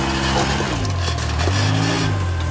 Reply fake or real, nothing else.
real